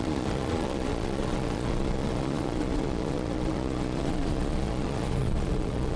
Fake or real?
fake